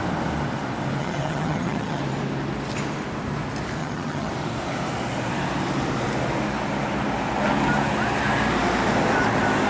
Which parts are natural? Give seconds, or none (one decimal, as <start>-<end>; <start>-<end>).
0.0-1.0; 2.0-3.8; 4.3-9.7